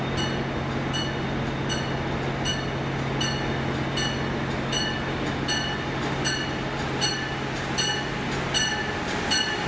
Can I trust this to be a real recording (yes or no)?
yes